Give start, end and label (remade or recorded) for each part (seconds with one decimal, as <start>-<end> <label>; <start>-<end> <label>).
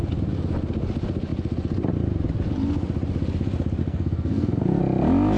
0.0-3.8 recorded; 3.8-4.8 remade; 4.8-5.4 recorded